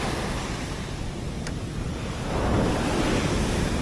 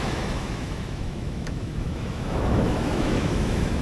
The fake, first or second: second